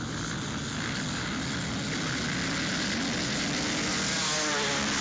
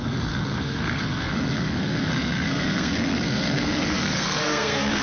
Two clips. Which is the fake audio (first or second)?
second